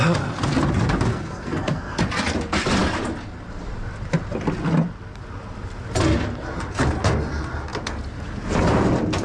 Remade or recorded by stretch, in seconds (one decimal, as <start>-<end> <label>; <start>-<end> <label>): 0.0-1.1 recorded; 1.1-2.0 remade; 2.0-9.2 recorded